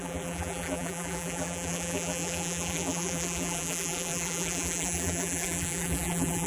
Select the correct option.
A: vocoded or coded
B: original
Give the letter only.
A